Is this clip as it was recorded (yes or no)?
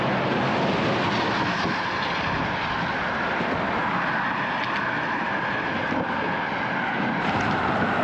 yes